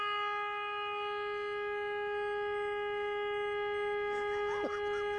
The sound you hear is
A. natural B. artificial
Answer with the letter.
A